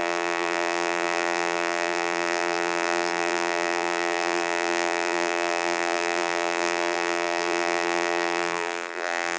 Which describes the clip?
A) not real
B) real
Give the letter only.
A